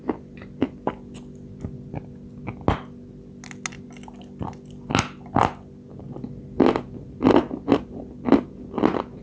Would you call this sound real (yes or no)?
yes